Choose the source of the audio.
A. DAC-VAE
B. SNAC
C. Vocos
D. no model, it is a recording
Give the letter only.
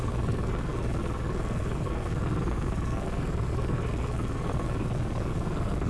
B